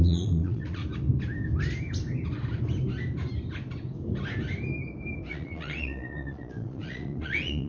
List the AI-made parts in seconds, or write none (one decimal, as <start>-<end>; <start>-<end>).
0.0-0.8; 5.3-7.7